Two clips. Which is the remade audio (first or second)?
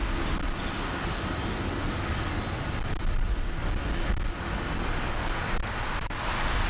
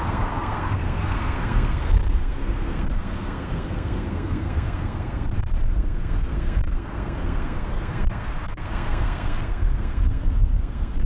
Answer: second